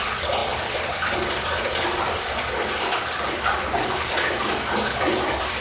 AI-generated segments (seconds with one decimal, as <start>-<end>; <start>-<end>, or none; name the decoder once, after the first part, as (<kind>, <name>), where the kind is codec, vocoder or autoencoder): 0.0-5.6 (codec, DAC)